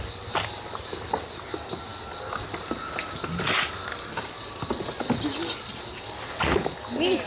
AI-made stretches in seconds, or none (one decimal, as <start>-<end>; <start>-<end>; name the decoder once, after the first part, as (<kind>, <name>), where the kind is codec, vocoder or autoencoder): none

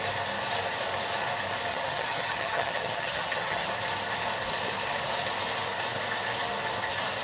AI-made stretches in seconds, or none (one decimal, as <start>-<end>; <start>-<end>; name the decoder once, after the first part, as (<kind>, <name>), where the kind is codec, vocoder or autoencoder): 1.7-3.7 (vocoder, HiFi-GAN)

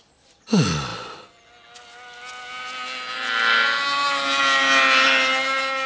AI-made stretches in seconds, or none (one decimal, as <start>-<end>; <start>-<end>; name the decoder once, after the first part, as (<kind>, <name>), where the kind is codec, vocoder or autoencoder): none

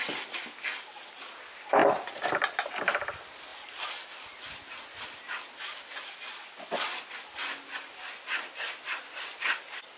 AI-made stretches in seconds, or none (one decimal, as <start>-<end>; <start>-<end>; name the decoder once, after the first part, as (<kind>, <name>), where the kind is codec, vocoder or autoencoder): none

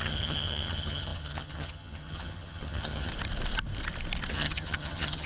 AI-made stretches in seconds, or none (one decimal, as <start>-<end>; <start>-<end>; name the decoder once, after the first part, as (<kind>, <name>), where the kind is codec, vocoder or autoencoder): 0.0-3.1 (vocoder, HiFi-GAN); 4.3-5.3